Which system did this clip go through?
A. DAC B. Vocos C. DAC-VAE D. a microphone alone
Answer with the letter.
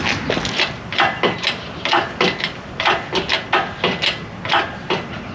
D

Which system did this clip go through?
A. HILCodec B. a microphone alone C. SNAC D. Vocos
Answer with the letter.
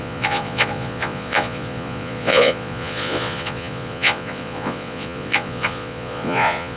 D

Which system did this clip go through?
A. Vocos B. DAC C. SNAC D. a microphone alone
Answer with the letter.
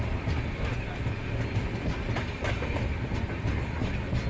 D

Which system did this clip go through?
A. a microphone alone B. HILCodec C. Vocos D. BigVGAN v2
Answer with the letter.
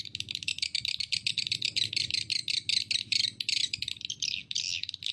A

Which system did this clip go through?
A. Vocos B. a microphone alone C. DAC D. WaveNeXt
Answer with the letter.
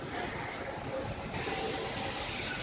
B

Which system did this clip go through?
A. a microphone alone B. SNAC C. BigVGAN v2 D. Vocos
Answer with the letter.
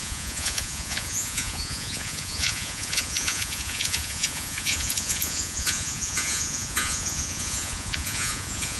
D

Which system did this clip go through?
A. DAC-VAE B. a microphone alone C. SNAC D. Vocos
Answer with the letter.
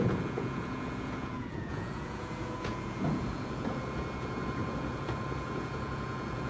D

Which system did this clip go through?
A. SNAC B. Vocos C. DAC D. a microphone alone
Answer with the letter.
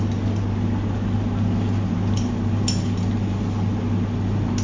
D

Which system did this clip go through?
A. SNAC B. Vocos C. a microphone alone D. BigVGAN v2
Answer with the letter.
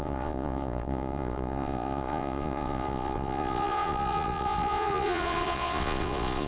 B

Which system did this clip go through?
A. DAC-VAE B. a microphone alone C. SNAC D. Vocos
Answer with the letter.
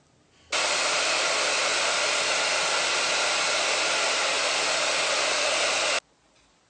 B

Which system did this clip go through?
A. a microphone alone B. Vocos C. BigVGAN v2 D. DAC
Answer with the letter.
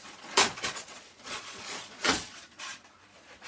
B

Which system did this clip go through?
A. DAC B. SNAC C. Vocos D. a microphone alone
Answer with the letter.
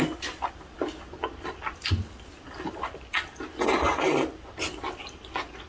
D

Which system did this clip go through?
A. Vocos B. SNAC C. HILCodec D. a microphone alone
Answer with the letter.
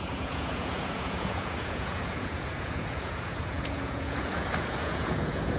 A